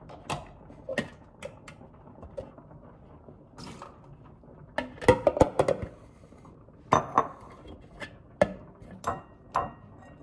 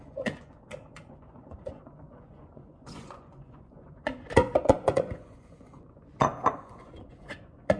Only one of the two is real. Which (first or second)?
first